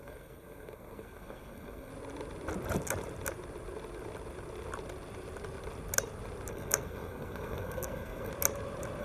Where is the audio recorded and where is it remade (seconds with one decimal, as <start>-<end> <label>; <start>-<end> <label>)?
0.0-1.9 remade; 1.9-6.5 recorded; 6.5-8.3 remade; 8.3-9.0 recorded